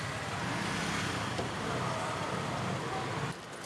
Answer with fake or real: real